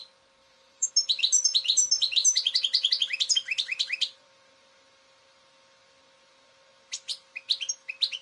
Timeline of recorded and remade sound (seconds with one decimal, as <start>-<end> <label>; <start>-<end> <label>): 0.0-0.4 recorded; 0.4-0.9 remade; 0.9-8.2 recorded